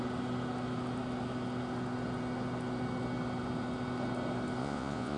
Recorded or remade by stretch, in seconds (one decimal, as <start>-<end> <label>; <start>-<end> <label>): 0.0-4.6 recorded; 4.6-5.2 remade